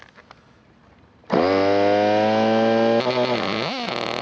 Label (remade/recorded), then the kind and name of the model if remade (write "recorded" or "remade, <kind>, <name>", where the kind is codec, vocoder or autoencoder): recorded